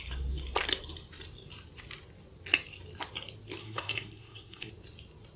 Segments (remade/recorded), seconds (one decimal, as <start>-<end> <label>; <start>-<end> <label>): 0.0-3.6 recorded; 3.6-4.7 remade; 4.7-5.4 recorded